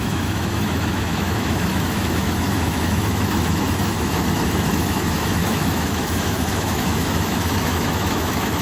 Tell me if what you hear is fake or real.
fake